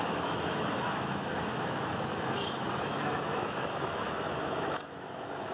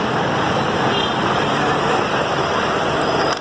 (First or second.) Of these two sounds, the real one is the second